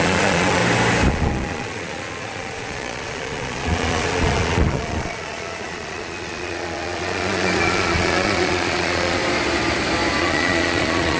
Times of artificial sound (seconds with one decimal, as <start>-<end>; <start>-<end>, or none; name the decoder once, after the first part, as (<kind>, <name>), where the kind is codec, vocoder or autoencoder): 0.0-0.6 (vocoder, Vocos); 1.1-9.2; 10.2-11.2